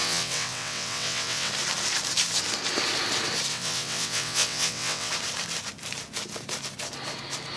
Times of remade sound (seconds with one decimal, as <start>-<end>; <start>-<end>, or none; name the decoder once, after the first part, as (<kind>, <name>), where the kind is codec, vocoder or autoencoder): 0.0-1.5 (vocoder, WaveNeXt); 3.5-5.1